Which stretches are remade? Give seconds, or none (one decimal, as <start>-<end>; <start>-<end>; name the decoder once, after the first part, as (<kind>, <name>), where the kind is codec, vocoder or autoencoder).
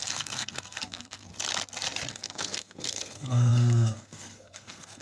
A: 0.0-1.3 (codec, SNAC); 2.1-5.0